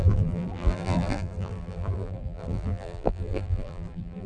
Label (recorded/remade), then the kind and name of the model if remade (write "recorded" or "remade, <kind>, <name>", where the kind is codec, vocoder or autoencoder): remade, vocoder, BigVGAN v2